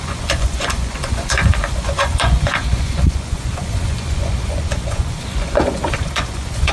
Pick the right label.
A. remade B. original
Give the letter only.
A